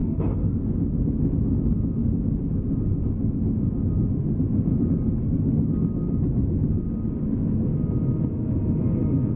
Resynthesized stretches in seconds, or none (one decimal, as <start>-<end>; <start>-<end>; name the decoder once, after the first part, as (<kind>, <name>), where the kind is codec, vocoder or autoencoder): 0.0-0.5 (autoencoder, DAC-VAE)